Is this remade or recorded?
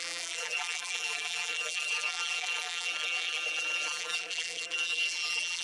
remade